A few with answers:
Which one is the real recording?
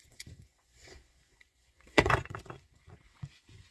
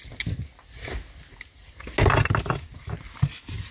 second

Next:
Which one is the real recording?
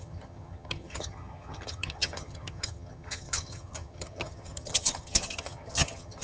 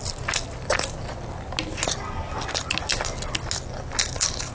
second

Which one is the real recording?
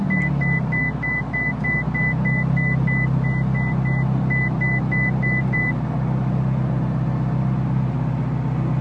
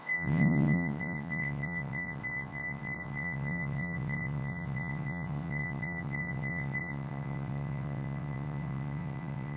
first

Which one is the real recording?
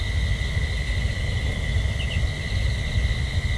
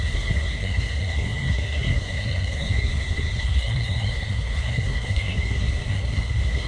first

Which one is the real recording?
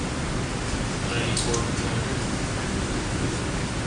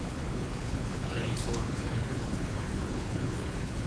first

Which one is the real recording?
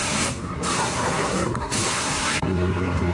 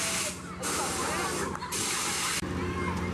second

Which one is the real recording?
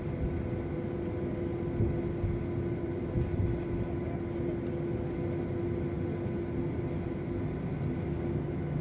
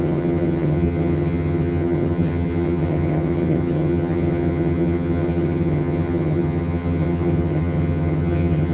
first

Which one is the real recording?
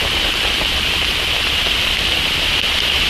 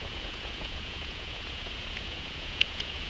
first